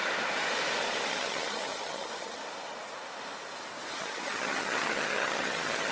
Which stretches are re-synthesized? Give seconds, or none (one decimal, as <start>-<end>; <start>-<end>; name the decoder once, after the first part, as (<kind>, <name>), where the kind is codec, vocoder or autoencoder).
1.1-2.4 (vocoder, HiFi-GAN); 3.9-5.9

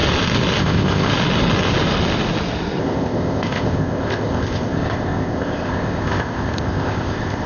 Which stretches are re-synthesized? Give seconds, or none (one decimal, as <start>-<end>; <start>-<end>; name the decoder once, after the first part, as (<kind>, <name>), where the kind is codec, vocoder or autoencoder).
0.6-1.1 (codec, ZipCodec); 2.8-7.5

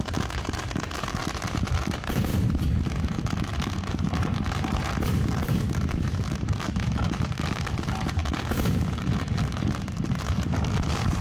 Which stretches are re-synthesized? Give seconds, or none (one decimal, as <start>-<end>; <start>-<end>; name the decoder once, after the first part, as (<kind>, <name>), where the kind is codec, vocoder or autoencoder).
0.0-1.2 (codec, DAC); 1.7-2.3; 2.9-11.2

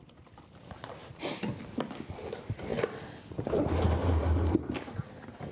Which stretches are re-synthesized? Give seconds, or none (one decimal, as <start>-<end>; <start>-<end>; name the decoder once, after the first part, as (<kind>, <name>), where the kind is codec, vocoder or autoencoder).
none

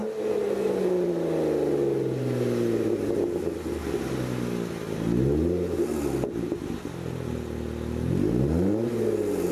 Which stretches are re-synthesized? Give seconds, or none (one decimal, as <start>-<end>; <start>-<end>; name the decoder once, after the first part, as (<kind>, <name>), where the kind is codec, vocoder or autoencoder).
none

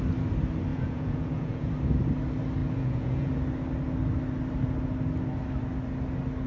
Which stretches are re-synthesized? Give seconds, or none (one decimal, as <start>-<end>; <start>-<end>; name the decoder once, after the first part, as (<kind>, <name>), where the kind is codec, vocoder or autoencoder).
0.7-1.7 (vocoder, Vocos); 2.6-3.3

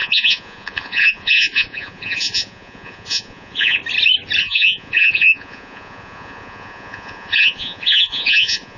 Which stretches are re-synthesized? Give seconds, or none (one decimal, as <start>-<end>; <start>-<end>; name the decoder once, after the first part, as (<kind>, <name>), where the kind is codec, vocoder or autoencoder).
0.0-3.8 (vocoder, Vocos); 4.4-8.8

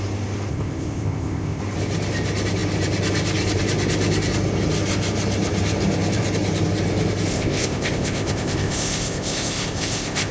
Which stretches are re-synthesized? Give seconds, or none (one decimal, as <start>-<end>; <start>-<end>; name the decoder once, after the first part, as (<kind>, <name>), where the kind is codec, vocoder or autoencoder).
0.5-1.6 (codec, ZipCodec); 7.3-10.3